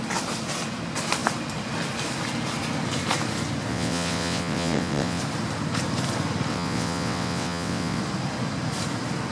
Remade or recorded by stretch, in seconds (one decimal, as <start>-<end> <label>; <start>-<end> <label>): 0.0-3.7 recorded; 3.7-5.2 remade; 5.2-6.5 recorded; 6.5-8.0 remade; 8.0-9.3 recorded